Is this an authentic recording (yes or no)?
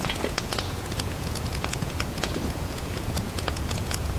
no